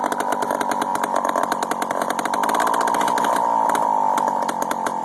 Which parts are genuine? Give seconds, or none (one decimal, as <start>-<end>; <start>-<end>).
0.0-5.0